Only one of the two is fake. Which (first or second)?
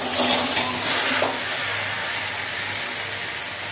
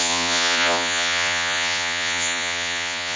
second